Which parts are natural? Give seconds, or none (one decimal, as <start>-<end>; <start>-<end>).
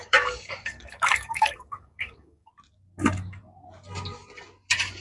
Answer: 2.5-5.0